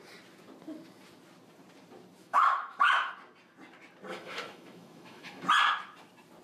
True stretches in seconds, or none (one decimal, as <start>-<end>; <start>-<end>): 0.0-2.2; 3.1-4.1; 5.5-6.4